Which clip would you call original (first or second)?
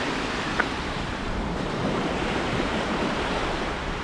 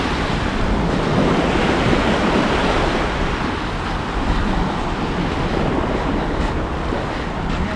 second